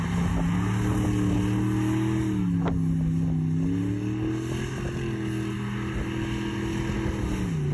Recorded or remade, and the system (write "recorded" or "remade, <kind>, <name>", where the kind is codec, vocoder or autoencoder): recorded